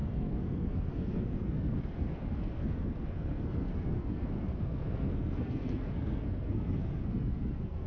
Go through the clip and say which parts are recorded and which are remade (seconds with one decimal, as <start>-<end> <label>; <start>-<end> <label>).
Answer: 0.0-7.9 remade